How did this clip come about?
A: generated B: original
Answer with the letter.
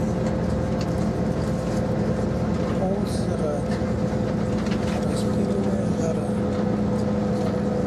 B